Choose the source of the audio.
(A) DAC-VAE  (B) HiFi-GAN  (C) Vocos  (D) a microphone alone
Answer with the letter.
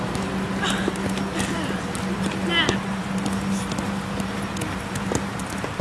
D